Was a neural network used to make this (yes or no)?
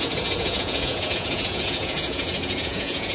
yes